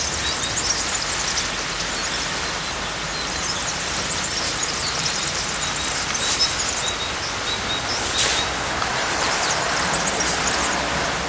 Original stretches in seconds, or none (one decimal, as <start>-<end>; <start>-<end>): 0.0-8.9; 9.5-11.3